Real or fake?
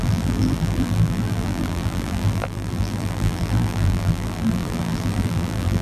fake